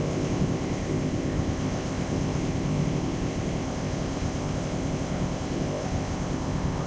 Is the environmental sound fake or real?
fake